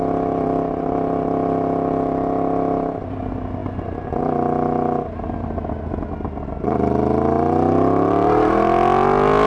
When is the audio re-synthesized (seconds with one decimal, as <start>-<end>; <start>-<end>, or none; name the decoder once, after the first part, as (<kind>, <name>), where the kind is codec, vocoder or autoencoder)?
none